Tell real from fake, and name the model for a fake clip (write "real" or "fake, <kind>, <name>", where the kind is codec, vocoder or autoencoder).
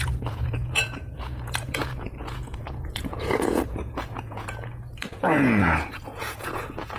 fake, vocoder, Vocos